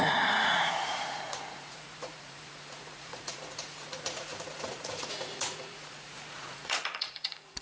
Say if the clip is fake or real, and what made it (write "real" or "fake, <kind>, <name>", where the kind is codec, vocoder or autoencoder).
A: fake, vocoder, Vocos